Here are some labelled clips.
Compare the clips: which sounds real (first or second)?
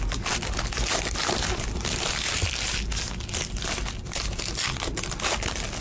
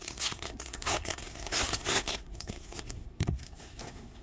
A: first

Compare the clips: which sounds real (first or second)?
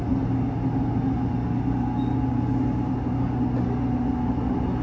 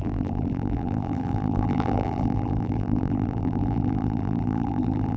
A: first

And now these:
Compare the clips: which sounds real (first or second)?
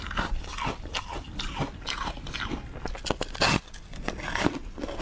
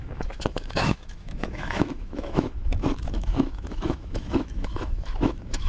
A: first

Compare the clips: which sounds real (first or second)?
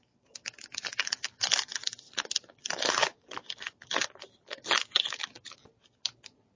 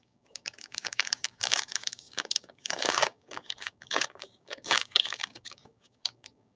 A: first